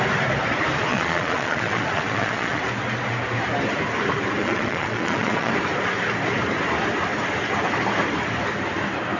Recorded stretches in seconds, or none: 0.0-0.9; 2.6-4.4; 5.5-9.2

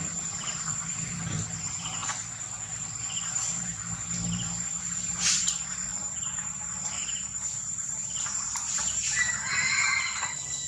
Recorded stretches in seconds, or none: 2.0-2.7